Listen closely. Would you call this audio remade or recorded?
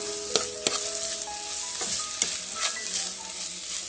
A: recorded